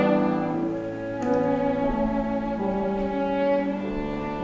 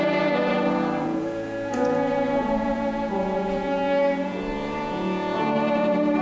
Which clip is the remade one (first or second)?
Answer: second